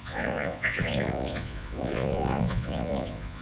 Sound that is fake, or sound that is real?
fake